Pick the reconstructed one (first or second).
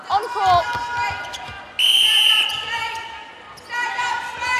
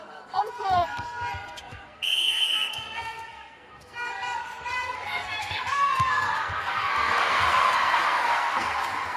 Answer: second